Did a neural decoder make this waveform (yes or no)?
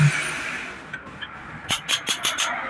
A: no